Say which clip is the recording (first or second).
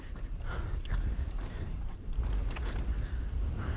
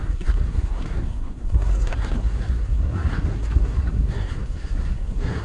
first